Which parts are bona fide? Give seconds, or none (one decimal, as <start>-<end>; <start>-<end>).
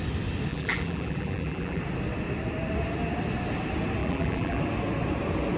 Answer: 0.0-0.5; 1.8-4.0; 4.6-5.6